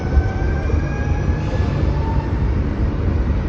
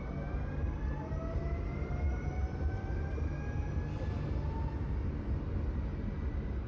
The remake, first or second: first